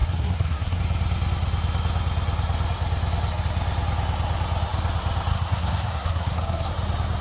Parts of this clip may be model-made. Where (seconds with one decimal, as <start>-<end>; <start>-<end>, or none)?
0.0-0.8; 5.3-6.7